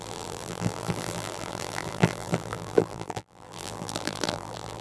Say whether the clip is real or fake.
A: fake